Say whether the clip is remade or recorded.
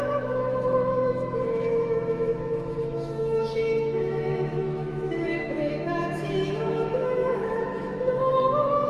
remade